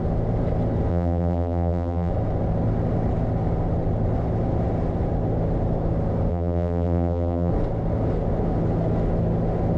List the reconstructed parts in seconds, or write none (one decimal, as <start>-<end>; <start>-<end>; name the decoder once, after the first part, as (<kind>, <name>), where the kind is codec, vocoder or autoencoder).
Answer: 0.9-2.1 (vocoder, BigVGAN v2); 6.3-7.5